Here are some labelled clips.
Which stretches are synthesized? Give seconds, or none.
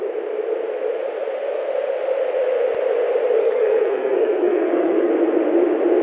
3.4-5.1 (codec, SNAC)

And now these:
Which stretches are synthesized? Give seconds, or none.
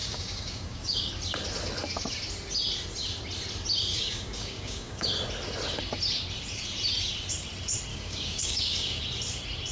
0.0-1.1 (codec, DAC); 3.9-5.1; 7.9-9.0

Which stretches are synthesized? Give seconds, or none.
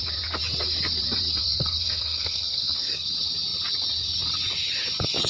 1.4-3.1 (codec, SNAC)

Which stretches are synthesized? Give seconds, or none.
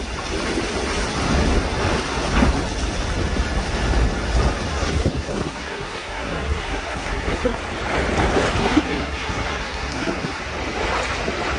4.7-7.6 (codec, SNAC); 8.6-10.4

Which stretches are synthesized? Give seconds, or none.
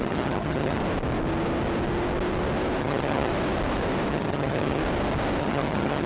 0.0-0.8 (vocoder, HiFi-GAN); 2.8-3.3; 4.1-4.8; 5.4-6.1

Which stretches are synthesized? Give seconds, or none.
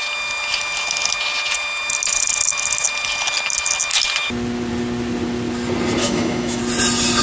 6.0-6.6 (autoencoder, DAC-VAE)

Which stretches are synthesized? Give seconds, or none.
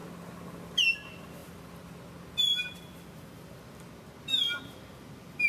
none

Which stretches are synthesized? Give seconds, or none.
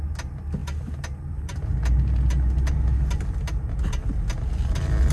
none